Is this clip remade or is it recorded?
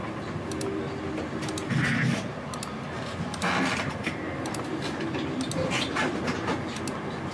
recorded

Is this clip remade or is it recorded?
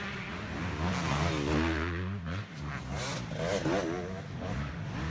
recorded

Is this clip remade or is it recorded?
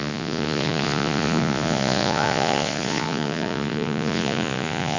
remade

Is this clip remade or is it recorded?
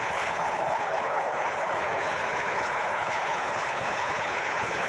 remade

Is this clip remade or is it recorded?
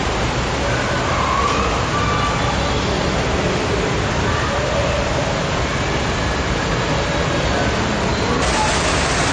recorded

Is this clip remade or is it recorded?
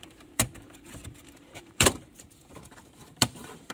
remade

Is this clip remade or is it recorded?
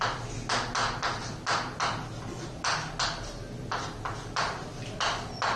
recorded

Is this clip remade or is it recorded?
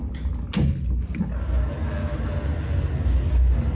recorded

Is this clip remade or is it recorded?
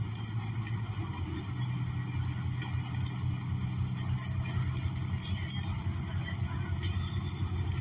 recorded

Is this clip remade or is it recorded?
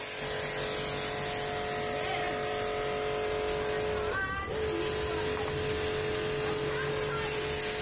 recorded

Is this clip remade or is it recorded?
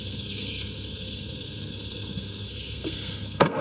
remade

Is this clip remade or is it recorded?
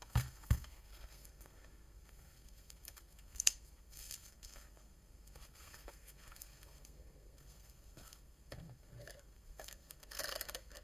remade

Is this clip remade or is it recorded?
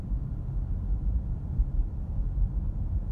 recorded